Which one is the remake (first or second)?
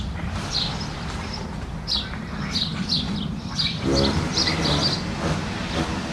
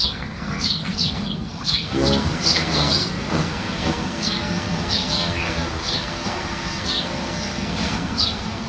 second